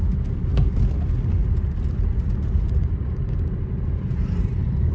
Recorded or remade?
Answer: recorded